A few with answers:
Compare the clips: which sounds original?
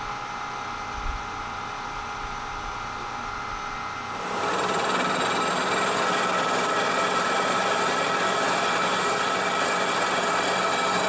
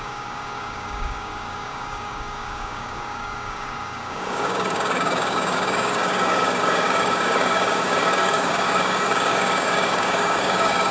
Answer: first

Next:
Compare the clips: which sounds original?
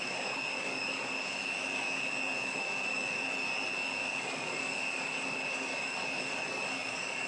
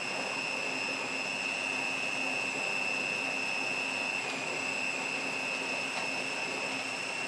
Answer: second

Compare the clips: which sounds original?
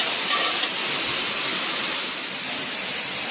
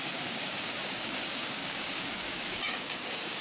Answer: first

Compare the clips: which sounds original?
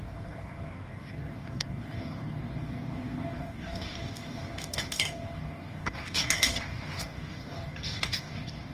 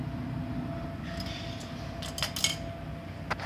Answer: second